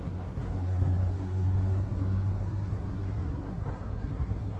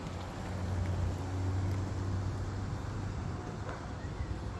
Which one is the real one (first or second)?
second